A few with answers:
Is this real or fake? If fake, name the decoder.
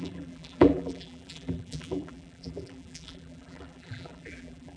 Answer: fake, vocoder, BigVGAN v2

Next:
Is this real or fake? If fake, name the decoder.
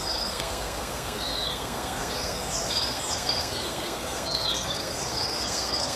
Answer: fake, codec, SNAC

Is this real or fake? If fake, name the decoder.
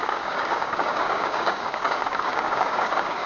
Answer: fake, codec, DAC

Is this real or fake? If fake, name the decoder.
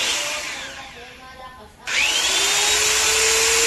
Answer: real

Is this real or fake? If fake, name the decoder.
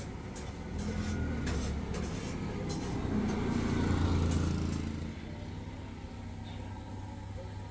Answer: real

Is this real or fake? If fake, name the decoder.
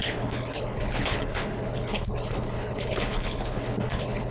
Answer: fake, codec, HILCodec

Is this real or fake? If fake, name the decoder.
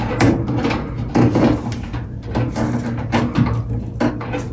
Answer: real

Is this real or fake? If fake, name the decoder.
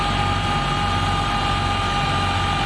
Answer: real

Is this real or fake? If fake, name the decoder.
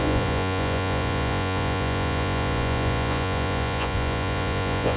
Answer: fake, vocoder, Vocos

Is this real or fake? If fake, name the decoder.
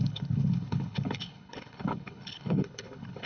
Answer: fake, codec, HILCodec